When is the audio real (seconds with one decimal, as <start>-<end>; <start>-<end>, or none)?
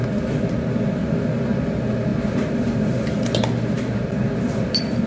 0.0-5.1